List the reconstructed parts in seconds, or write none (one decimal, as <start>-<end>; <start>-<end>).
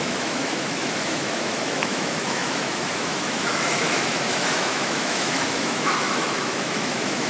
0.0-7.3